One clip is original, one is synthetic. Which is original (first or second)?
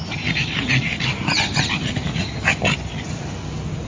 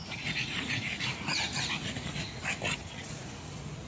first